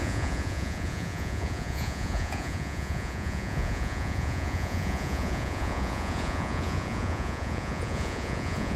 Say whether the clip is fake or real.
fake